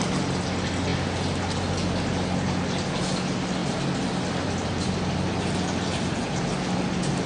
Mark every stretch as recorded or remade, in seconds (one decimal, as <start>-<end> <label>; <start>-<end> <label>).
0.0-7.3 recorded